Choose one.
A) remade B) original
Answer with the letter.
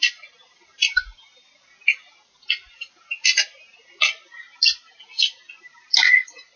B